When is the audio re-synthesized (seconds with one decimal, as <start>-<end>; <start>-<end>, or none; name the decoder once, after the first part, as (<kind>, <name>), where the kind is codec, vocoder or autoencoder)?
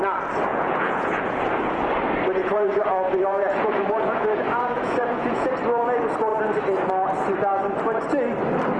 0.5-1.9 (vocoder, Vocos); 2.4-5.5